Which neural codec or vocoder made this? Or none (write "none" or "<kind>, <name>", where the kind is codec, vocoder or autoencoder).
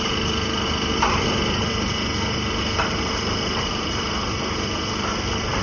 none